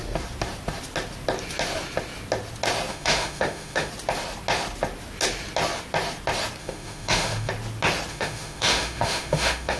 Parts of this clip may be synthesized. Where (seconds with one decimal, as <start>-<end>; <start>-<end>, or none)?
2.9-3.9; 6.6-7.5; 8.1-9.8